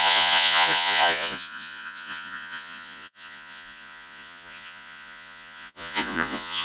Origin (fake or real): fake